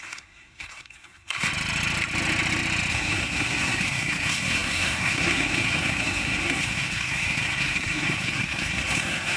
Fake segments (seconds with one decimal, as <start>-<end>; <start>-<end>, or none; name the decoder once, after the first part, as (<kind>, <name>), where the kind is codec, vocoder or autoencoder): 0.0-1.5 (codec, SNAC); 2.9-9.4

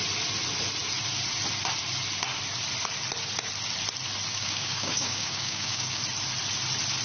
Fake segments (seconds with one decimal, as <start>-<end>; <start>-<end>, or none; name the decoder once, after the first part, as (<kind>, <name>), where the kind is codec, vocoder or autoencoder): 4.3-6.0 (codec, DAC)